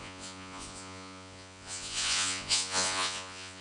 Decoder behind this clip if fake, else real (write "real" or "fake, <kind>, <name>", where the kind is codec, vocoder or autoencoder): fake, vocoder, Vocos